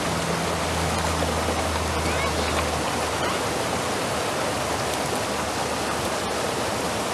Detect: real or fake real